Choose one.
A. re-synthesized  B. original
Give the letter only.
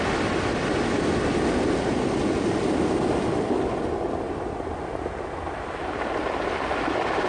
B